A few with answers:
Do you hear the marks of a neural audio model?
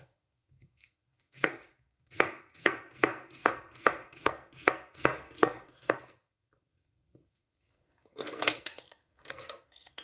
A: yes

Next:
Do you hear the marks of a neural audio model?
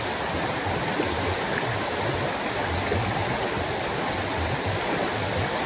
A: no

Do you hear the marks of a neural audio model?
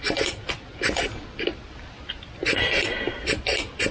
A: no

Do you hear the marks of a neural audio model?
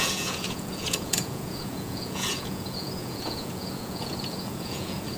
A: yes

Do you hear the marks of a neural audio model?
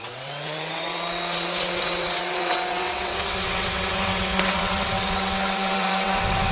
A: yes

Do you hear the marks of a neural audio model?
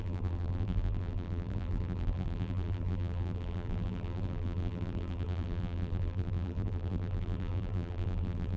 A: yes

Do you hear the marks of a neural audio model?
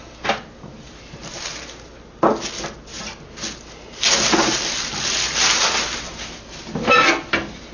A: no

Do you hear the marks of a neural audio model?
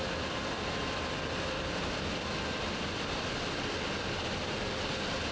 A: no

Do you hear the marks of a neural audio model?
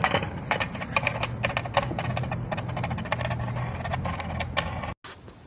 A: no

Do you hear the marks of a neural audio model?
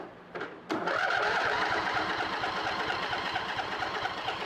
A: yes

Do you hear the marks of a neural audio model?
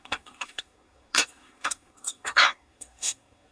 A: yes